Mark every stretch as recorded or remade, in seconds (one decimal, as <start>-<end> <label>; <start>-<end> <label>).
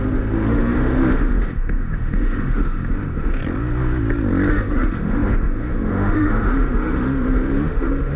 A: 0.0-3.4 remade; 3.4-4.5 recorded; 4.5-8.2 remade